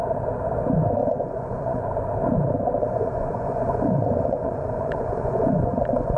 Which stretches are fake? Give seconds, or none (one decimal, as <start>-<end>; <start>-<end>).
1.0-1.8; 2.8-6.2